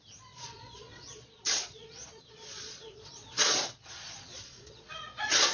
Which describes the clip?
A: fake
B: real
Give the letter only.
A